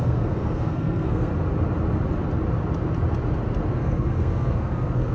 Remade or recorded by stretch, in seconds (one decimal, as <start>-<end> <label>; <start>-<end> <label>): 0.0-1.3 remade; 1.3-3.7 recorded; 3.7-5.1 remade